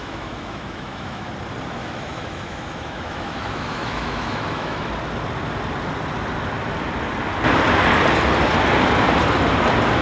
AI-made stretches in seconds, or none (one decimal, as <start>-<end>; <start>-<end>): 0.0-1.3; 1.8-4.9